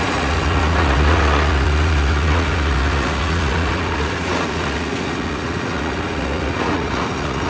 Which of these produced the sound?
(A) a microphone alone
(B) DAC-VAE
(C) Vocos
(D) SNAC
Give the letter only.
C